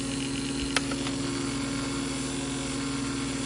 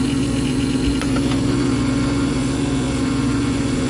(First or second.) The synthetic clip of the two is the second